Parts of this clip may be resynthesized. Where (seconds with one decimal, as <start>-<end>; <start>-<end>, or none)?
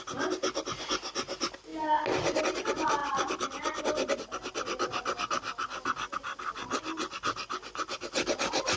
3.0-3.8